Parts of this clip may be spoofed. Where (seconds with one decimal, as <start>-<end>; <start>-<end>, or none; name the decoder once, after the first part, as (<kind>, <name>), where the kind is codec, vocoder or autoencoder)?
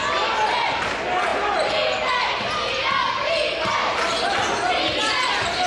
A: none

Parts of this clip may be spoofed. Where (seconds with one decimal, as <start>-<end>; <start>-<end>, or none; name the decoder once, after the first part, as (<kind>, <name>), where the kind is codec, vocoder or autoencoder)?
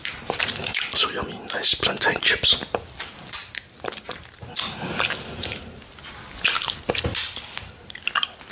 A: none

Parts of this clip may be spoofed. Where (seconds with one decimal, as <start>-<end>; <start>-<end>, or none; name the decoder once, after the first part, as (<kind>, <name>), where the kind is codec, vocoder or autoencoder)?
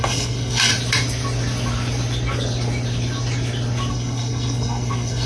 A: 0.0-0.7 (codec, SNAC); 3.9-5.3